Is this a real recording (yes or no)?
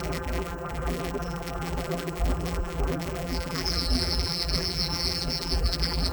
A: no